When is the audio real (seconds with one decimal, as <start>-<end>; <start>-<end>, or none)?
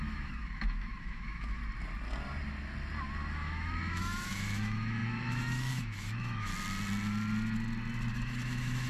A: 1.6-3.3; 6.5-8.1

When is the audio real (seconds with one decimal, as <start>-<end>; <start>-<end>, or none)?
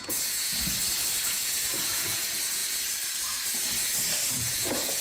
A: 0.5-1.3; 2.6-4.3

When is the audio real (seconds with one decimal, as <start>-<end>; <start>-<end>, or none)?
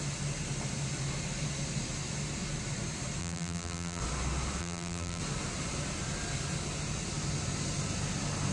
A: 0.0-3.2; 4.0-4.6; 5.2-8.5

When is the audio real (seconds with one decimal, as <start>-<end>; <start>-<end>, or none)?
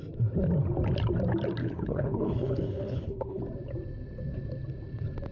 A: 0.0-1.6; 3.4-5.3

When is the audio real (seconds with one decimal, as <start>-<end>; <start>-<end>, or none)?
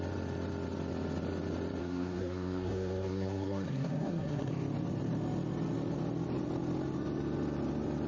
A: 0.0-1.8; 4.5-8.1